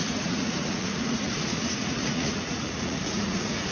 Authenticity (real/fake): fake